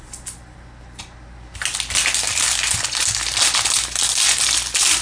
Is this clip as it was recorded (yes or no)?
yes